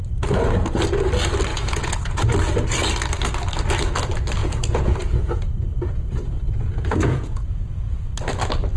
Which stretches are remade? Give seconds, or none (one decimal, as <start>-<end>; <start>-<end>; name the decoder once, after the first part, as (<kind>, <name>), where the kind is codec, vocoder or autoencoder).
1.5-2.2 (vocoder, Vocos); 4.4-8.0

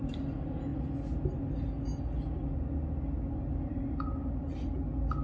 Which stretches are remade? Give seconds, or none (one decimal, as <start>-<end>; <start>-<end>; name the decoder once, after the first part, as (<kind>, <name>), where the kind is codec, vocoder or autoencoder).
none

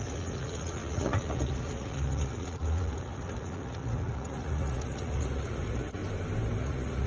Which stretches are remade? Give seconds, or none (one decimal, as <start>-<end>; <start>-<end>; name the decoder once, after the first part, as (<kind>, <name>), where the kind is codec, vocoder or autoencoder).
0.0-6.0 (vocoder, Vocos); 6.6-7.1

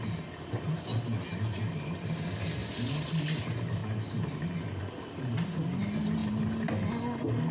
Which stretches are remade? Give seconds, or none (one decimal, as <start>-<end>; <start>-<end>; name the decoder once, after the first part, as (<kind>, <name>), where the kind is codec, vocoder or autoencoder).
none

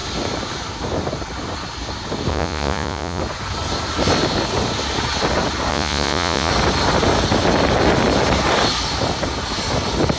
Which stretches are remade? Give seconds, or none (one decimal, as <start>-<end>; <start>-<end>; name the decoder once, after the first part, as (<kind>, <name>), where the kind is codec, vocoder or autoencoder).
2.3-3.2 (vocoder, Vocos); 5.7-6.5

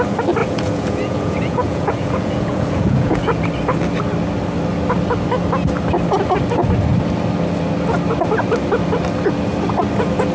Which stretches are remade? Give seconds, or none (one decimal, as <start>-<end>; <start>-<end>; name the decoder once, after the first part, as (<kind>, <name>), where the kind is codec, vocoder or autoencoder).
0.4-3.4 (vocoder, Vocos)